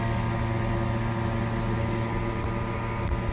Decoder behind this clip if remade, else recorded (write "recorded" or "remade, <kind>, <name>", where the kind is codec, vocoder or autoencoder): recorded